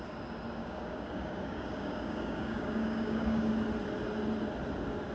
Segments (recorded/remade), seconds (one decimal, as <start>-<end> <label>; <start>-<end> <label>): 0.0-0.6 recorded; 0.6-3.5 remade; 3.5-5.1 recorded